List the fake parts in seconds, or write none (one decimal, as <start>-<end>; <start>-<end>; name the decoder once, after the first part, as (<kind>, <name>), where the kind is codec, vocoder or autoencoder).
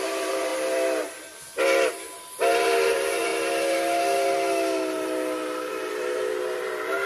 0.0-0.5 (vocoder, BigVGAN v2); 2.5-3.3; 5.7-7.1